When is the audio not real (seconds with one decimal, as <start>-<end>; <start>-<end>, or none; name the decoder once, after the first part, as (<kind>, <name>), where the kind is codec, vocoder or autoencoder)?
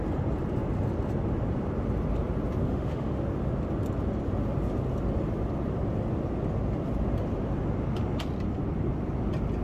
2.6-3.2 (autoencoder, DAC-VAE)